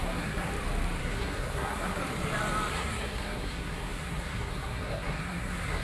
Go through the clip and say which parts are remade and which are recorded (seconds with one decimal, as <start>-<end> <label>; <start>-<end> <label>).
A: 0.0-0.5 remade; 0.5-1.0 recorded; 1.0-2.0 remade; 2.0-2.7 recorded; 2.7-5.8 remade